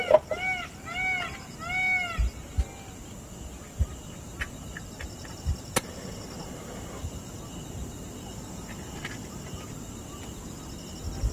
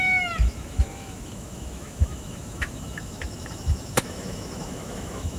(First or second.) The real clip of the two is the first